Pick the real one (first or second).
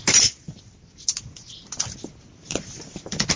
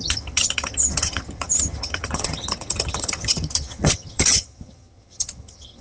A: first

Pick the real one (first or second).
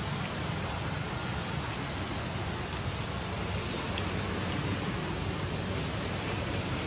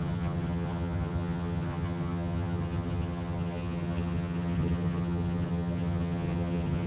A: first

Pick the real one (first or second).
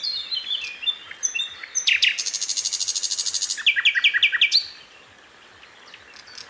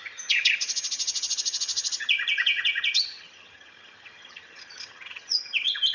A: first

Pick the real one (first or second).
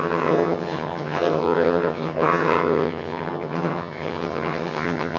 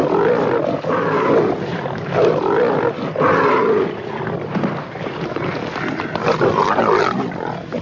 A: second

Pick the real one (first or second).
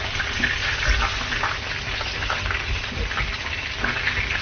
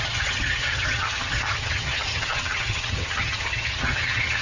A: first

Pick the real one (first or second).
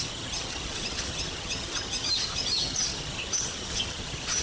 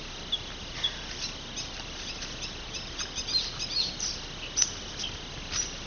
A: second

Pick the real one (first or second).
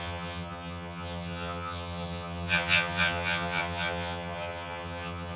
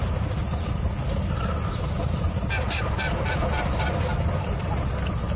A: second